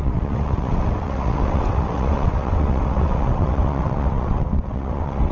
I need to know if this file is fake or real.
fake